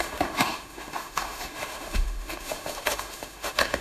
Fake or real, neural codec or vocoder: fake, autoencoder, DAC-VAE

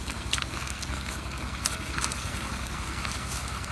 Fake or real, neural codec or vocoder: fake, codec, SNAC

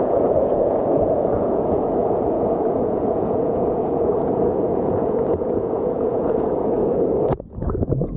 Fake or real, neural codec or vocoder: fake, vocoder, Vocos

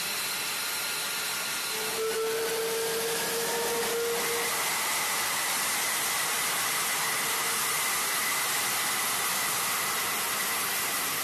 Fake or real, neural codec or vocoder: real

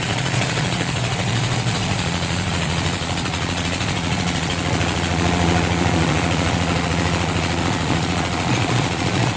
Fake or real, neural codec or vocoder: fake, vocoder, Vocos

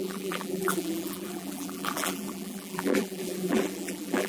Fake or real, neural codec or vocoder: fake, vocoder, BigVGAN v2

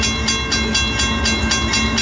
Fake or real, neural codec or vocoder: real